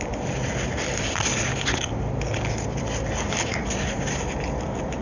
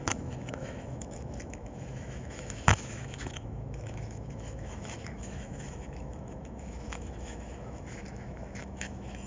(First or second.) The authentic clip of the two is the first